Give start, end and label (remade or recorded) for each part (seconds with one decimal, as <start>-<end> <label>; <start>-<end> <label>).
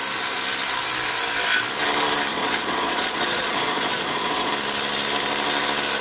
0.0-2.3 recorded; 2.3-4.5 remade; 4.5-6.0 recorded